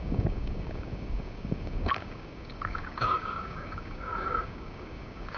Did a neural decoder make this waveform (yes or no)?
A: yes